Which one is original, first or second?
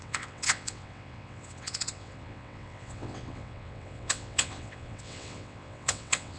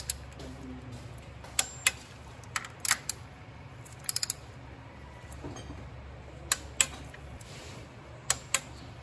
second